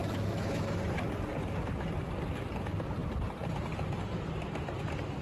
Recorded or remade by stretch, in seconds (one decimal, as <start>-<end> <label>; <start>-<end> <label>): 0.0-0.8 remade; 0.8-5.2 recorded